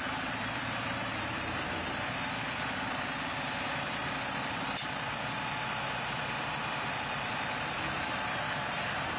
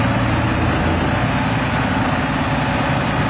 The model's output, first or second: first